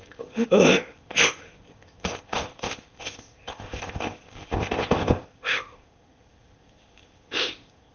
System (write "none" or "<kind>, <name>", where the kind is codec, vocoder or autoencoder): codec, ZipCodec